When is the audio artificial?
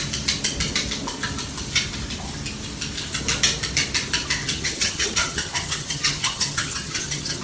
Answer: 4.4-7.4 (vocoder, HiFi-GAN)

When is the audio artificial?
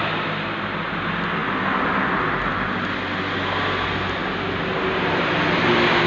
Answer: none